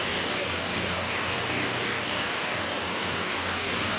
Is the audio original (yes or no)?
no